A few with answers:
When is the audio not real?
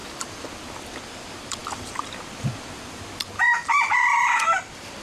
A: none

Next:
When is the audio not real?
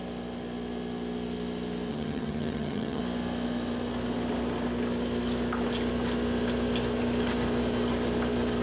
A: 1.9-3.0 (vocoder, HiFi-GAN)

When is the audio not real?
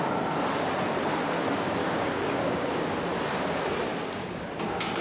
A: 1.8-2.9 (codec, DAC); 3.9-4.5